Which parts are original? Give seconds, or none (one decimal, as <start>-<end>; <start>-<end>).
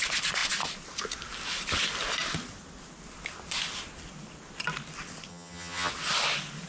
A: 0.0-5.3; 5.9-6.7